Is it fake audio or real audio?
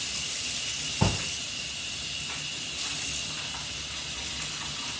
real